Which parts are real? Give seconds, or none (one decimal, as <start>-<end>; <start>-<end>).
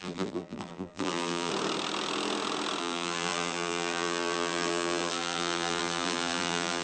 1.5-2.8